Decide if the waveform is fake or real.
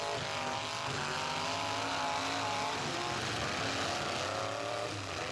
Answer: real